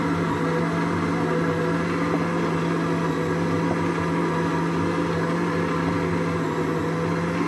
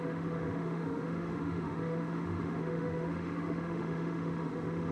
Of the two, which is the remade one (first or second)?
second